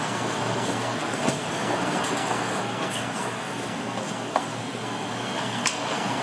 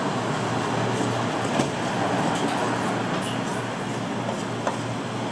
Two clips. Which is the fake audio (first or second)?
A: first